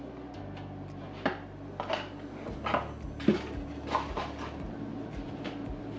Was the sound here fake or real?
real